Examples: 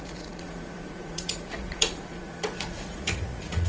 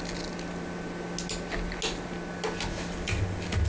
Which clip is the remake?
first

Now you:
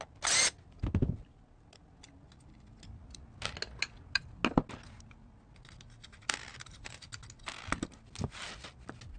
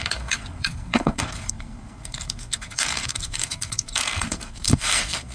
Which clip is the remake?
second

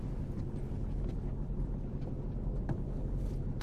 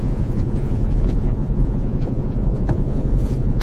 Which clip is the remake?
second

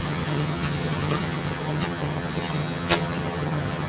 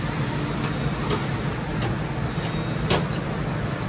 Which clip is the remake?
first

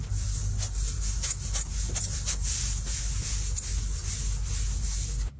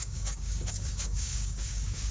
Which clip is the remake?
second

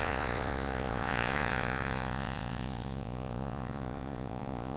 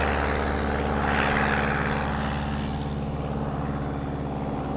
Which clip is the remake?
first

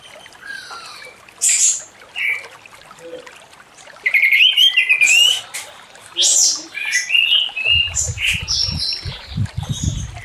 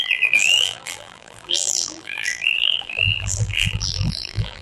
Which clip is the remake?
second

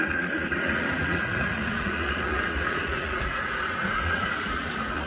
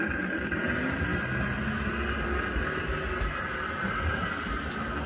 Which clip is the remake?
first